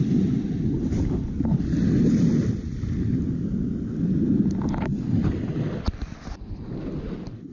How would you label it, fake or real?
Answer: real